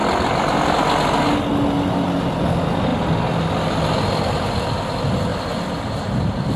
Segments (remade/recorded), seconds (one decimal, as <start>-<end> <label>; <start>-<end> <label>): 0.0-5.3 recorded; 5.3-5.9 remade; 5.9-6.6 recorded